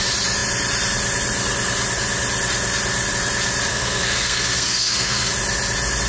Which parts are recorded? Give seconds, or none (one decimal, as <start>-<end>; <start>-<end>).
0.0-3.7; 5.3-6.1